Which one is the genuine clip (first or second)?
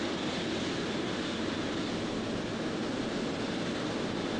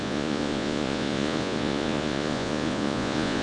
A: first